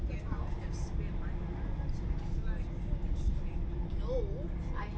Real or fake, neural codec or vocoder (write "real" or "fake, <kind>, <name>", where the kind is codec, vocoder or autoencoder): real